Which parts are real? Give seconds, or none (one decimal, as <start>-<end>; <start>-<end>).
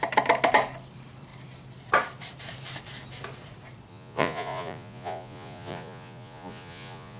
0.0-3.9